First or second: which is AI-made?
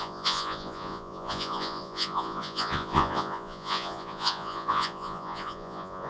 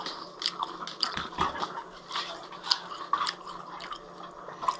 first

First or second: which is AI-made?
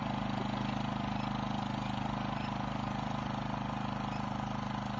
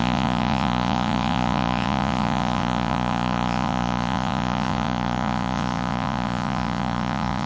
second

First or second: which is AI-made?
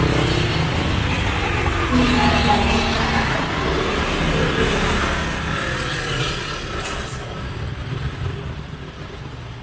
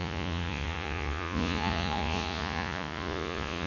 second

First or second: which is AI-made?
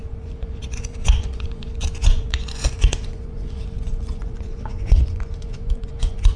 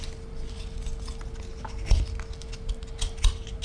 first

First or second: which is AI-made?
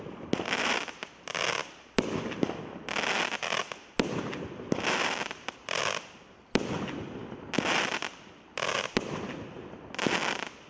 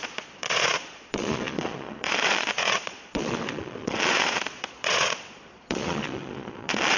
second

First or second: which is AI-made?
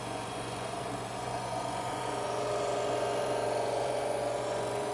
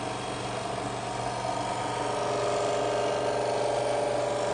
first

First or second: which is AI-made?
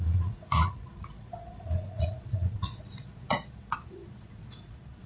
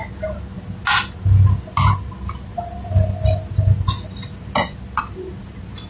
first